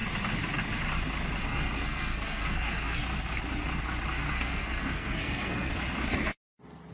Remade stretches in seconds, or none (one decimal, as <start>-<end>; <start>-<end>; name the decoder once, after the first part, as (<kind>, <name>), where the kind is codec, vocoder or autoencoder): 1.4-3.0 (codec, SNAC); 4.3-5.7

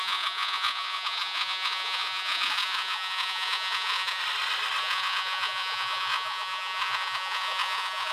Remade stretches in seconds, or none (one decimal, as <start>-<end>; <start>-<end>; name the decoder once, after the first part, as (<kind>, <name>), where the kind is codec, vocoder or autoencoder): 0.0-4.2 (vocoder, Vocos); 4.8-8.1

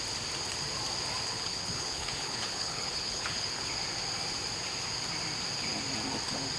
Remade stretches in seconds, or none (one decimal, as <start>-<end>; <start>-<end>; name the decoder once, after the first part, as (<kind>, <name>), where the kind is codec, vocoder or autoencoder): 1.3-3.6 (codec, HILCodec)

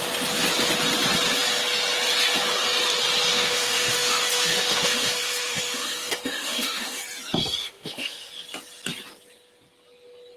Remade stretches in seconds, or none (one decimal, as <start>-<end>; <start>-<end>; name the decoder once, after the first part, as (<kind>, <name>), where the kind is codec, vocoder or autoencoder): 3.3-7.0 (autoencoder, DAC-VAE); 7.6-8.3

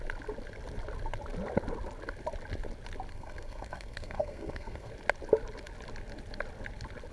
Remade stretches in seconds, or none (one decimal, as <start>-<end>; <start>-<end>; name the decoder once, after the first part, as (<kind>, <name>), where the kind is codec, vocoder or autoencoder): 3.1-4.9 (codec, SNAC)

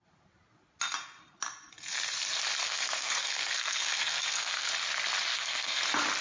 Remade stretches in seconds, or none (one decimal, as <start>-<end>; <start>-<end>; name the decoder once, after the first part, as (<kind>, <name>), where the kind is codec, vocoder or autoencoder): 2.6-4.7 (codec, SNAC); 5.3-5.8

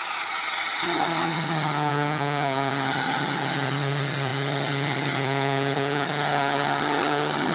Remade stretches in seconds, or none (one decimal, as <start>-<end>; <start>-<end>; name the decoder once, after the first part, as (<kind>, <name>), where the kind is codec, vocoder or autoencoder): 0.0-7.5 (vocoder, HiFi-GAN)